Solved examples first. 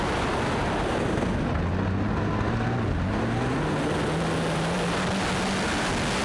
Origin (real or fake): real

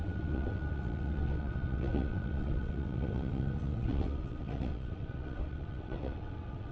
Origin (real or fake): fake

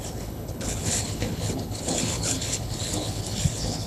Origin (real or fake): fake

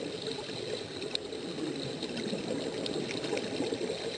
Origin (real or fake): real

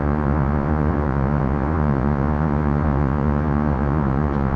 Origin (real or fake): fake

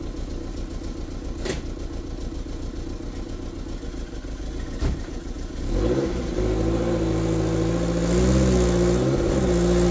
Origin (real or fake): real